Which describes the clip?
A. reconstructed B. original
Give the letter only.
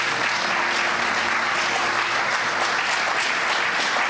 B